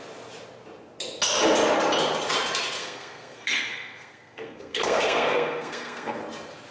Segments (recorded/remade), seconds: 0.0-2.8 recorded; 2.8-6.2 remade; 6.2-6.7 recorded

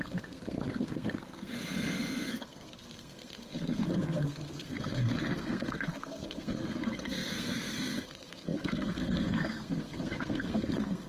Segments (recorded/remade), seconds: 0.0-11.1 remade

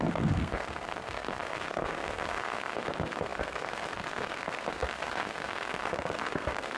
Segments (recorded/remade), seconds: 0.0-6.8 remade

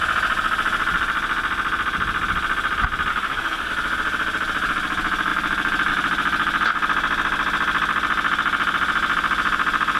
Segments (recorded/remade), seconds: 0.0-3.1 recorded; 3.1-3.7 remade; 3.7-10.0 recorded

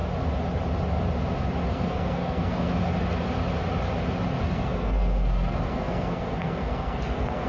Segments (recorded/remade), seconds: 0.0-1.7 recorded; 1.7-2.8 remade; 2.8-4.4 recorded; 4.4-7.5 remade

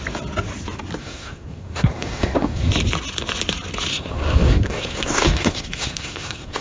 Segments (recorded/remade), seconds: 0.0-1.0 recorded; 1.0-2.7 remade; 2.7-3.9 recorded; 3.9-6.6 remade

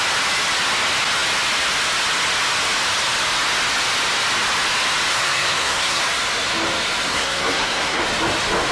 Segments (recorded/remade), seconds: 0.0-5.1 recorded; 5.1-6.0 remade; 6.0-7.1 recorded; 7.1-8.0 remade; 8.0-8.7 recorded